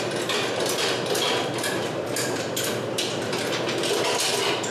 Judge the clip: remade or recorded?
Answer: recorded